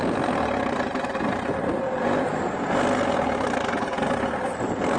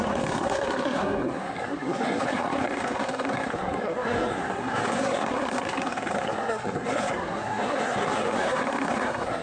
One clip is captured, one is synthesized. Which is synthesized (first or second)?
second